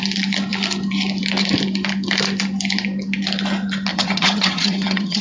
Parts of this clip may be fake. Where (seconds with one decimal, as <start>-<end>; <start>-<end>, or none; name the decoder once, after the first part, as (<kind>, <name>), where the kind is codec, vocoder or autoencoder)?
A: 3.9-5.2 (vocoder, HiFi-GAN)